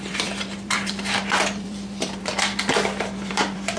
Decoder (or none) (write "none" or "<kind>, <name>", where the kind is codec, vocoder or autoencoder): vocoder, BigVGAN v2